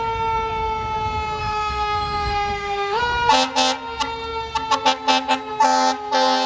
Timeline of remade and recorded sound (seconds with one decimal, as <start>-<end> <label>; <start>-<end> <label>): 0.0-1.4 recorded; 1.4-3.0 remade; 3.0-6.5 recorded